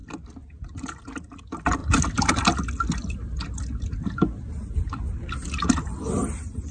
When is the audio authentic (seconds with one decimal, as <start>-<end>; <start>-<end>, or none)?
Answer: 0.0-6.7